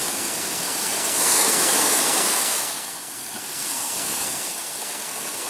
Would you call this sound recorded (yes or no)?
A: no